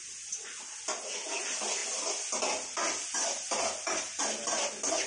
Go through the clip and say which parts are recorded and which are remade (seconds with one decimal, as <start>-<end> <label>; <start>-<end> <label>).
0.0-5.1 recorded